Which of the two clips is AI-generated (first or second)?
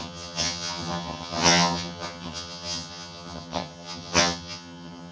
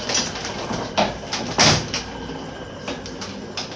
first